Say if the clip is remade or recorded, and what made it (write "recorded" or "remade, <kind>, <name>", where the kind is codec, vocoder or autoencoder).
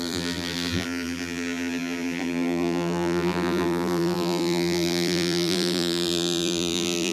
remade, vocoder, BigVGAN v2